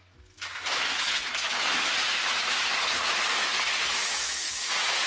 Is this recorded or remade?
remade